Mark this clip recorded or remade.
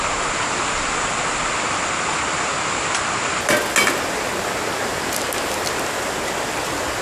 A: recorded